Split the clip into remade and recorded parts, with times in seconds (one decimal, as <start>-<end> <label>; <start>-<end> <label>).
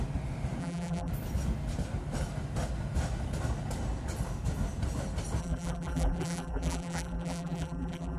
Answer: 0.0-0.6 recorded; 0.6-1.1 remade; 1.1-5.4 recorded; 5.4-8.2 remade